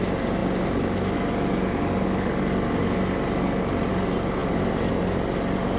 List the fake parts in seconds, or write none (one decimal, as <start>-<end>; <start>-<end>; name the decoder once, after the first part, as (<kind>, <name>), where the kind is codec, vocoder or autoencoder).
none